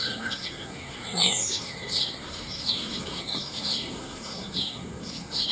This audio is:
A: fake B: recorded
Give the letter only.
A